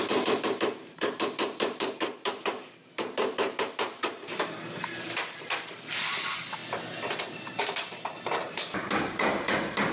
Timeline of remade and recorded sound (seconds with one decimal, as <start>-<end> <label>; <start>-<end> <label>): 0.0-6.6 remade; 6.6-7.5 recorded; 7.5-9.9 remade